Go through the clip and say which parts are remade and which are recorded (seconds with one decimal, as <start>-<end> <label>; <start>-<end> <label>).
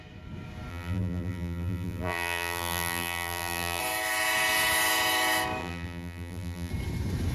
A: 0.0-0.7 recorded; 0.7-3.8 remade; 3.8-5.6 recorded; 5.6-6.7 remade; 6.7-7.3 recorded